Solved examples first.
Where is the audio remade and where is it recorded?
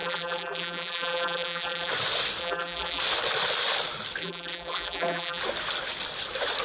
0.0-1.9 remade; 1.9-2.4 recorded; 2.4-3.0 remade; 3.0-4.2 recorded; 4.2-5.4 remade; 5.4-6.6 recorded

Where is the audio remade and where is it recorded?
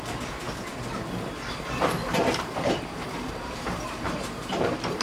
0.0-2.0 recorded; 2.0-5.0 remade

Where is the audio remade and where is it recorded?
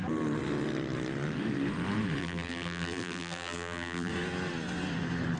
0.0-2.2 recorded; 2.2-4.1 remade; 4.1-5.4 recorded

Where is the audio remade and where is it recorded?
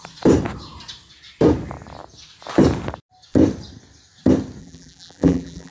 0.0-4.6 recorded; 4.6-5.7 remade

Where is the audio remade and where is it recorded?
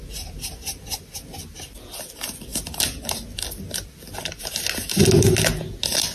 0.0-6.1 recorded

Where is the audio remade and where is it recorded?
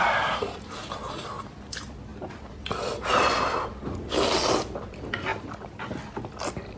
0.0-5.3 recorded; 5.3-5.8 remade; 5.8-6.8 recorded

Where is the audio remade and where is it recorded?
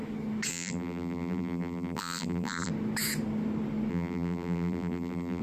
0.0-0.5 recorded; 0.5-2.7 remade; 2.7-3.9 recorded; 3.9-5.4 remade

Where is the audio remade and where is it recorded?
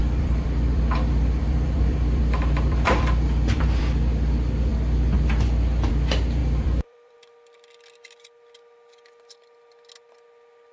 0.0-3.8 remade; 3.8-6.4 recorded; 6.4-7.1 remade; 7.1-10.7 recorded